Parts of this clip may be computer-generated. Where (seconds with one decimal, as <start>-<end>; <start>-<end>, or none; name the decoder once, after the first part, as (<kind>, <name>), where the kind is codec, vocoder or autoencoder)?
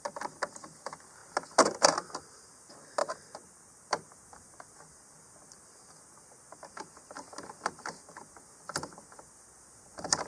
none